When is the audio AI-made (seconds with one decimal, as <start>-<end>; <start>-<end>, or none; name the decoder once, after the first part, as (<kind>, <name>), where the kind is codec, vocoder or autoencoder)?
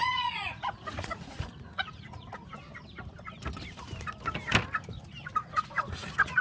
0.0-2.5 (vocoder, Vocos); 5.4-6.4